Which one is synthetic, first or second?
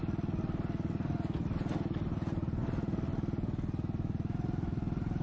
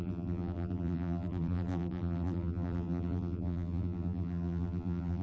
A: second